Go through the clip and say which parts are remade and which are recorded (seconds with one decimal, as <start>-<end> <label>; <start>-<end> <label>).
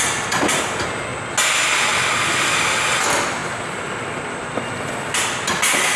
0.0-6.0 recorded